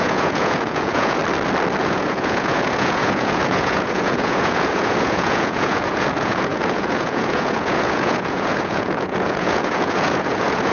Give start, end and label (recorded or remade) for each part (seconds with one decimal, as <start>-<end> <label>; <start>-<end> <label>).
0.0-1.2 remade; 1.2-1.8 recorded; 1.8-10.7 remade